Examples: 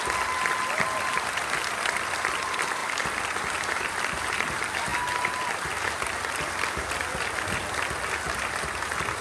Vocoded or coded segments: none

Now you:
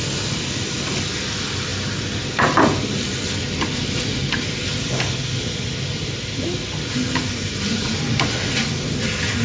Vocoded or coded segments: none

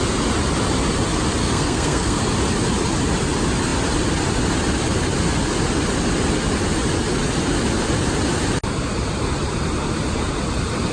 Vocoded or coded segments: 1.4-2.2 (codec, SNAC)

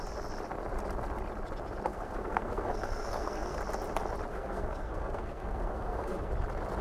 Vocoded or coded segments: 1.9-3.6 (codec, SNAC); 4.3-6.3

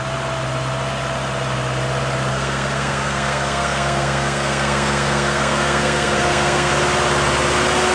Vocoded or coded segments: 2.3-6.7 (codec, SNAC)

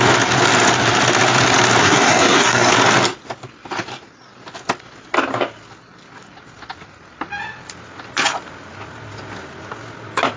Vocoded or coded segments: 1.8-2.7 (codec, SNAC)